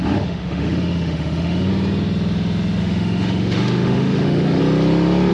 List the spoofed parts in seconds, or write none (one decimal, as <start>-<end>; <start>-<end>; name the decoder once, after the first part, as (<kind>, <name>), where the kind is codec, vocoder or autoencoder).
0.0-1.7 (autoencoder, DAC-VAE); 2.8-4.6